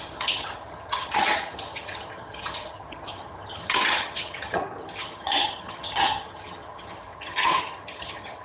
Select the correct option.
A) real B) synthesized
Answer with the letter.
B